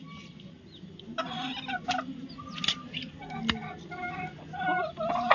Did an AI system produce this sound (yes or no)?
no